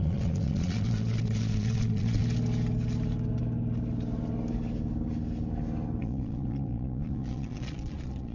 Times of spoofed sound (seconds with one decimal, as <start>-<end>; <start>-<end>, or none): 0.0-2.2; 6.0-8.3